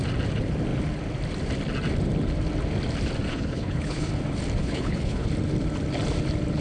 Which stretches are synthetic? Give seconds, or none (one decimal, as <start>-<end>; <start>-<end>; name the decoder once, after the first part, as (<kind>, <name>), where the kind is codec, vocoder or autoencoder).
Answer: 3.3-4.1 (codec, HILCodec); 4.6-5.3

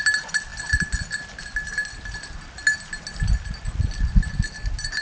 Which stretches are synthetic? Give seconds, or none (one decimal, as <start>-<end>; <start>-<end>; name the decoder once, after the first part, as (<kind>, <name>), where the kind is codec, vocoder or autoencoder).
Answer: none